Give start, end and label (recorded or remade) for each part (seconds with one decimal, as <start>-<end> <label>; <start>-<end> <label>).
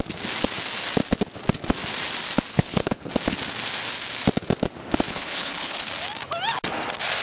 0.0-2.5 recorded; 2.5-3.1 remade; 3.1-5.1 recorded; 5.1-5.9 remade; 5.9-7.2 recorded